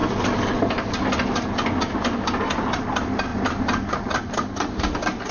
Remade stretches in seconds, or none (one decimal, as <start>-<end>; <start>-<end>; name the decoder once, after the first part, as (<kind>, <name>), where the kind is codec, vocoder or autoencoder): none